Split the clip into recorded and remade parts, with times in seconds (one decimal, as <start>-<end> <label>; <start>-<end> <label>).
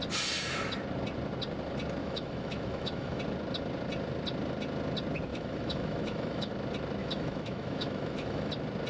0.0-2.0 recorded; 2.0-3.2 remade; 3.2-5.3 recorded; 5.3-6.5 remade; 6.5-7.0 recorded; 7.0-8.5 remade; 8.5-8.9 recorded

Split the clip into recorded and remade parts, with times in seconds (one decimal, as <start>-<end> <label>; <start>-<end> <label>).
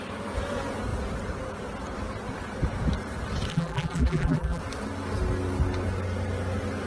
0.0-3.5 recorded; 3.5-4.6 remade; 4.6-6.9 recorded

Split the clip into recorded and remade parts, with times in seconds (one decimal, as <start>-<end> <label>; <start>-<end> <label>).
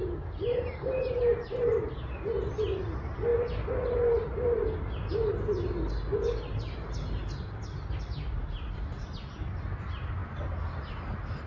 0.0-11.5 recorded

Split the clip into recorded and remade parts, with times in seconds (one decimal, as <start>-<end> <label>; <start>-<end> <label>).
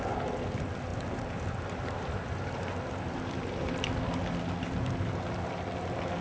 0.0-6.2 recorded